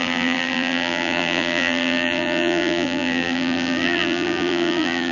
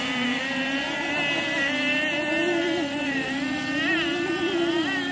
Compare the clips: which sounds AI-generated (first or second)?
first